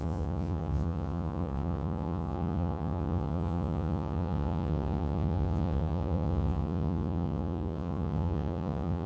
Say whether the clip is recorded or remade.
remade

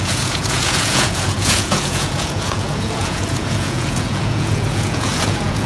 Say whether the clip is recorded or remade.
remade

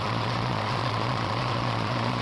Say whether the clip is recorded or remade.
remade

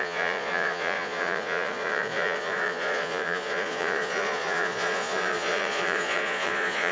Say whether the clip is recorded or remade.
remade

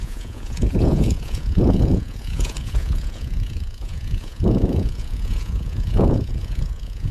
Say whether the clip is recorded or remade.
remade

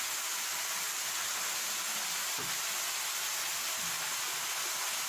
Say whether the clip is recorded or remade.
recorded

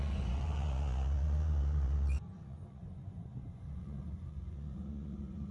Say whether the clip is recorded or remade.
remade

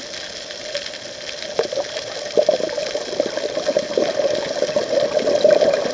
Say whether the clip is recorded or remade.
recorded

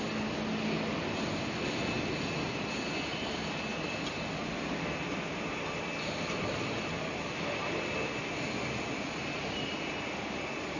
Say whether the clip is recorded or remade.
recorded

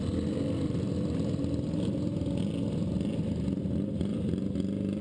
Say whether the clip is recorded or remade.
recorded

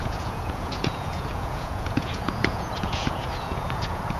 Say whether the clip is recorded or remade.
remade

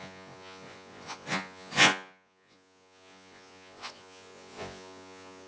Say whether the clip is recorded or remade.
remade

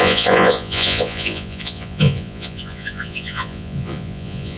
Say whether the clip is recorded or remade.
remade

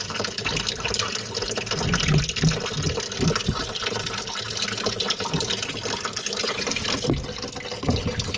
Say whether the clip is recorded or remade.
recorded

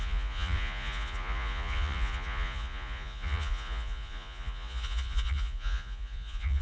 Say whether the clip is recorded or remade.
remade